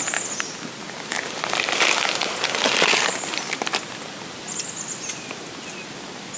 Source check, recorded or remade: recorded